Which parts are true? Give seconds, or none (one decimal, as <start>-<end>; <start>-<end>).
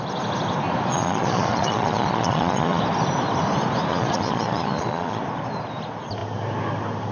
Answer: 0.0-0.9; 2.8-3.9; 5.2-7.1